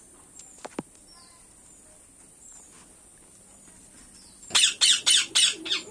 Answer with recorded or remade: recorded